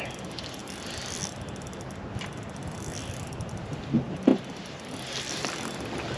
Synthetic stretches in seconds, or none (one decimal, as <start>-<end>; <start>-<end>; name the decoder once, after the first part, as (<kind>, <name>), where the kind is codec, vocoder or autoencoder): none